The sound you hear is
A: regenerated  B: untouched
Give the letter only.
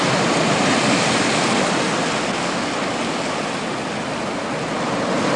B